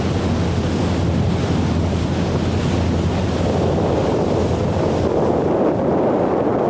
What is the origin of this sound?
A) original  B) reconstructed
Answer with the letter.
A